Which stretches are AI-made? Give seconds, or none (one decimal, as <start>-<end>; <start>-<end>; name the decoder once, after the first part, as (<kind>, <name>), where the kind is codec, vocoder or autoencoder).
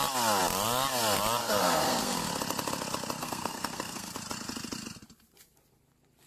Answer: 1.4-2.3 (codec, SNAC); 3.2-4.1